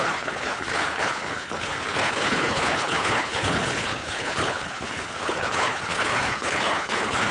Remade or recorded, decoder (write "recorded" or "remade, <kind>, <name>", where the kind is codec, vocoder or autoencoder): remade, codec, HILCodec